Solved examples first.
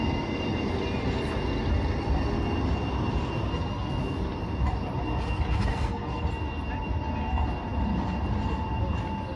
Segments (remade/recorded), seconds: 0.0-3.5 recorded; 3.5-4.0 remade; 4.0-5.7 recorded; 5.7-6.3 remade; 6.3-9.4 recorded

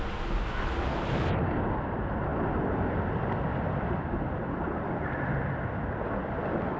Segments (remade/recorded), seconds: 0.0-6.8 recorded

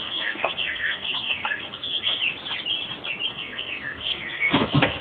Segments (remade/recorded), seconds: 0.0-2.2 remade; 2.2-3.3 recorded; 3.3-5.0 remade

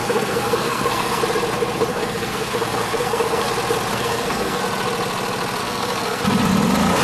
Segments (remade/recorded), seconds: 0.0-1.2 remade; 1.2-1.9 recorded; 1.9-3.5 remade; 3.5-3.9 recorded; 3.9-4.6 remade; 4.6-5.6 recorded; 5.6-6.2 remade; 6.2-7.0 recorded